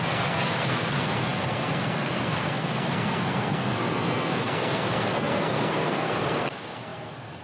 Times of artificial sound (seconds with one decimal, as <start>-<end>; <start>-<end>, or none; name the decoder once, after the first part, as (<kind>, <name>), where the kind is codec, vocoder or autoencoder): 0.0-7.4 (codec, SNAC)